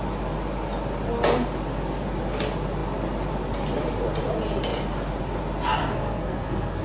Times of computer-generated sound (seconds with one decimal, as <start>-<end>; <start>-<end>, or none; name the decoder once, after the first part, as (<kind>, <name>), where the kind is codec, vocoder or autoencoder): 5.8-6.8 (codec, SNAC)